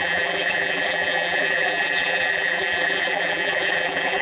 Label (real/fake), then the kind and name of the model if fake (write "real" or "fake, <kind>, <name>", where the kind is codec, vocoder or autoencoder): fake, vocoder, BigVGAN v2